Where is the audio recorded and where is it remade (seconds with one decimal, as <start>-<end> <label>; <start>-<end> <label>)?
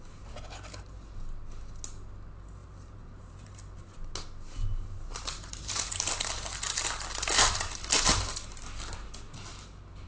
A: 0.0-2.6 recorded; 2.6-3.8 remade; 3.8-4.6 recorded; 4.6-6.1 remade; 6.1-10.1 recorded